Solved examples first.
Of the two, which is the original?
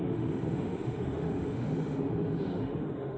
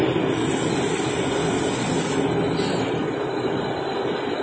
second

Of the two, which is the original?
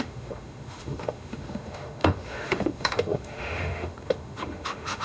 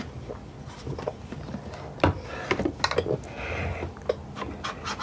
second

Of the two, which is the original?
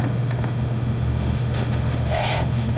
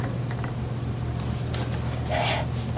second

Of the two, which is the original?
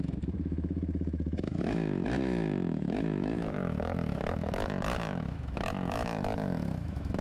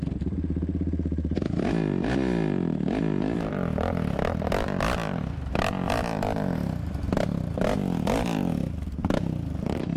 second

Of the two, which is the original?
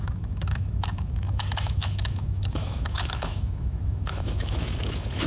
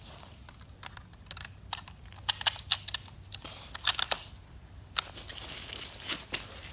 second